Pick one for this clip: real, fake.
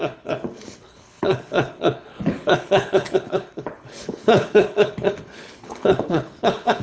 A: fake